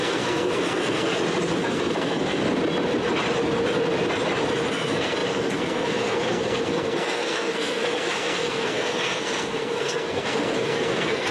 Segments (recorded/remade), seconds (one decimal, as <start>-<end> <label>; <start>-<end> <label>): 0.0-1.1 remade; 1.1-1.6 recorded; 1.6-2.4 remade; 2.4-4.7 recorded; 4.7-11.3 remade